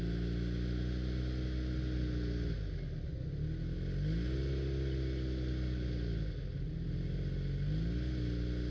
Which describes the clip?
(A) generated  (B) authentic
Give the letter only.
B